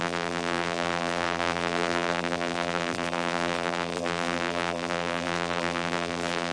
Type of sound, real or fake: fake